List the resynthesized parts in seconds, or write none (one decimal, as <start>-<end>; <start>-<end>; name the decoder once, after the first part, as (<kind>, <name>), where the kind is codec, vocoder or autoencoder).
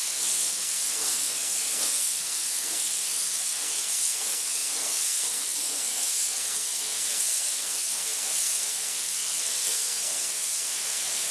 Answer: 0.0-11.3 (codec, SNAC)